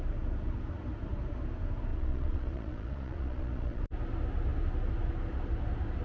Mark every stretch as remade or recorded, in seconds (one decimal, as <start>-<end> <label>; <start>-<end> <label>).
0.0-1.9 recorded; 1.9-3.8 remade; 3.8-6.0 recorded